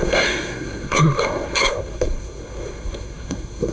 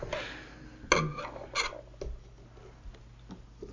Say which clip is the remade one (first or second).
first